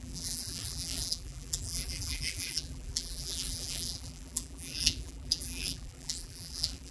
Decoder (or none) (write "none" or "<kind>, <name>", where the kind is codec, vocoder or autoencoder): vocoder, BigVGAN v2